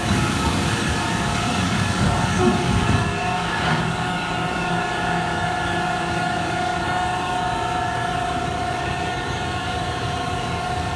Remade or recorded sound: remade